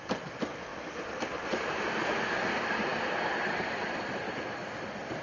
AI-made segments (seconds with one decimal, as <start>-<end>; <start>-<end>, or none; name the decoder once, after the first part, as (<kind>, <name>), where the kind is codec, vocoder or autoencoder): 0.7-1.9 (vocoder, BigVGAN v2)